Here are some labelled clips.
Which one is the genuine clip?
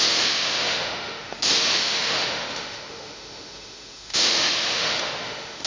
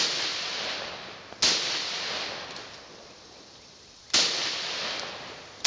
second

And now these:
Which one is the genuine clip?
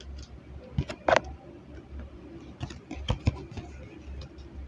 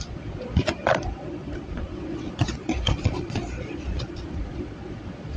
first